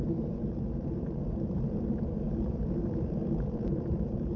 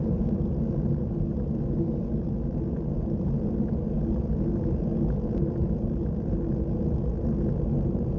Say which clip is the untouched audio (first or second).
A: second